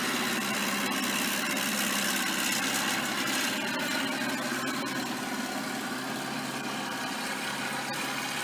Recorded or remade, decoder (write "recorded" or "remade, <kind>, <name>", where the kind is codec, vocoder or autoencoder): recorded